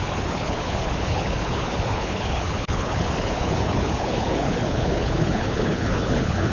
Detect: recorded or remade remade